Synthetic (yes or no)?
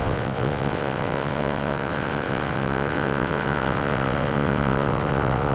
yes